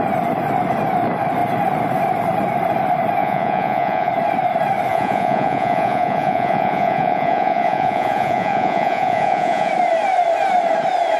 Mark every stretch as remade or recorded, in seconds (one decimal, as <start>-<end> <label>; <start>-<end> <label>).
0.0-3.2 recorded; 3.2-4.1 remade; 4.1-4.9 recorded; 4.9-9.7 remade; 9.7-11.2 recorded